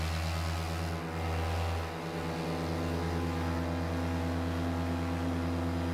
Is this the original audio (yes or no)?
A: yes